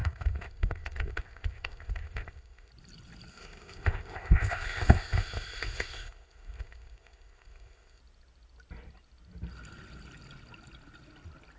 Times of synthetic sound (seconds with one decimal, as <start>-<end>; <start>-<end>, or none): 0.0-2.7; 3.3-8.0